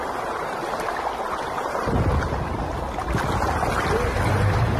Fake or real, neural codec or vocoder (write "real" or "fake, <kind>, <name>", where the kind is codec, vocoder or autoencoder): real